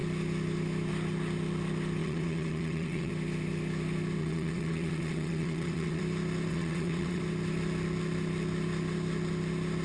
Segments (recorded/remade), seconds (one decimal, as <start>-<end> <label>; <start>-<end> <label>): 0.0-2.0 recorded; 2.0-3.1 remade; 3.1-4.2 recorded; 4.2-6.0 remade; 6.0-6.5 recorded; 6.5-7.2 remade; 7.2-9.8 recorded